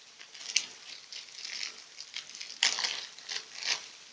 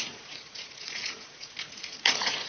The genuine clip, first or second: first